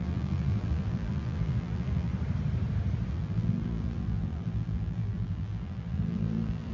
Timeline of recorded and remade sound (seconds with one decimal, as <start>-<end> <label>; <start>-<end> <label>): 0.0-2.1 remade; 2.1-3.1 recorded; 3.1-6.7 remade